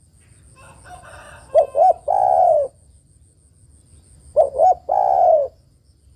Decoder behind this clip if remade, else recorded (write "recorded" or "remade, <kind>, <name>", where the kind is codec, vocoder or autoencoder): recorded